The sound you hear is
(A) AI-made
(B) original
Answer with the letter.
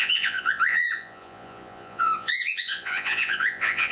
A